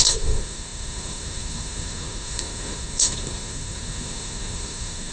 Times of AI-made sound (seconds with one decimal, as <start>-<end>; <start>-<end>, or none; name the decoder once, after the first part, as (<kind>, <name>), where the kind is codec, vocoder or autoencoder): 0.0-5.1 (codec, SNAC)